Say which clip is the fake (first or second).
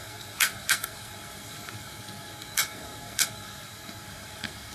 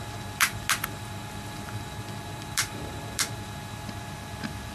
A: first